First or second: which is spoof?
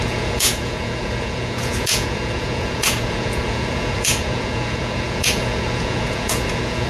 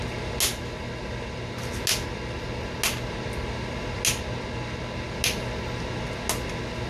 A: first